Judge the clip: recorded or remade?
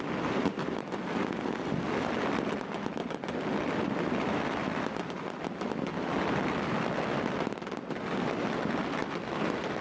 recorded